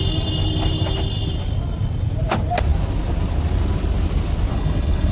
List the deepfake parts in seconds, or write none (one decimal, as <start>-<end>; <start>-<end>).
4.5-5.1